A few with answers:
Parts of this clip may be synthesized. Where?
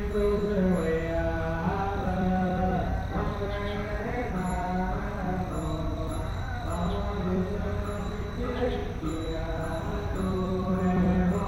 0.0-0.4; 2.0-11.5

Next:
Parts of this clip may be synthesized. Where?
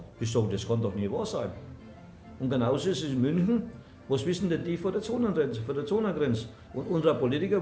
1.0-1.8; 3.1-3.6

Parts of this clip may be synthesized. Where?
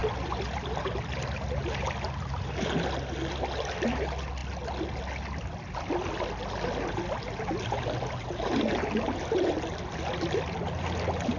none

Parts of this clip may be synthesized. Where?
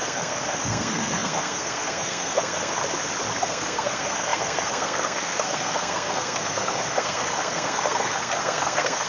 0.0-2.8; 3.4-9.1